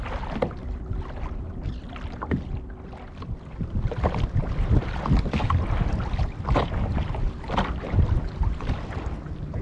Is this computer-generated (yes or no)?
no